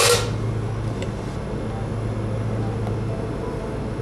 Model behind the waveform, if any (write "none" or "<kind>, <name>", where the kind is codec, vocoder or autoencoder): none